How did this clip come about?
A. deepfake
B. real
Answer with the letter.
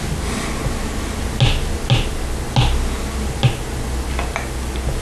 B